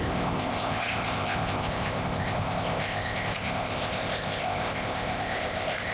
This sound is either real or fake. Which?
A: fake